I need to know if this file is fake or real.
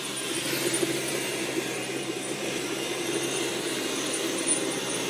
fake